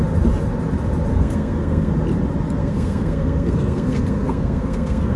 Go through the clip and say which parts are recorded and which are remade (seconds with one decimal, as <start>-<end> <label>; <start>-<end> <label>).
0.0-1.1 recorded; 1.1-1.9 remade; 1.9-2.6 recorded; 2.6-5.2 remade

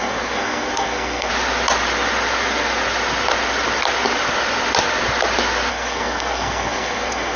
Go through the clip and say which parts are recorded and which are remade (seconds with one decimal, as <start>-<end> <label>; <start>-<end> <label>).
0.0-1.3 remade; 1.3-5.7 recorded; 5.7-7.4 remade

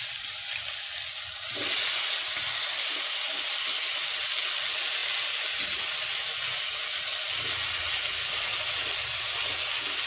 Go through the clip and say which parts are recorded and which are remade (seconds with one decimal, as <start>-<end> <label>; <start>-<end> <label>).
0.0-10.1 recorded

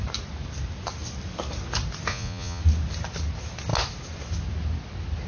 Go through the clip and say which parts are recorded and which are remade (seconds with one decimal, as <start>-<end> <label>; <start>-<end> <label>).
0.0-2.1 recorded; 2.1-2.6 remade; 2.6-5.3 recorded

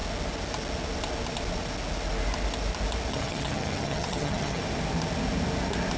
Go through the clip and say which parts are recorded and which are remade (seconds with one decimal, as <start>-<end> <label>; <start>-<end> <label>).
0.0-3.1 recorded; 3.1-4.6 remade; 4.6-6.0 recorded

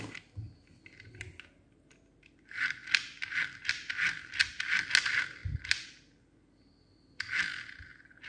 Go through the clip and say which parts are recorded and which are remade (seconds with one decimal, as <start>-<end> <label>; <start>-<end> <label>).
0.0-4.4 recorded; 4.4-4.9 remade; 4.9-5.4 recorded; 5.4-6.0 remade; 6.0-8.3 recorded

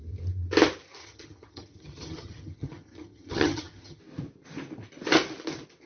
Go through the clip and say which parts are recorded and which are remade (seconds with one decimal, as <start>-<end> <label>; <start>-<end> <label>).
0.0-1.0 recorded; 1.0-4.0 remade; 4.0-5.9 recorded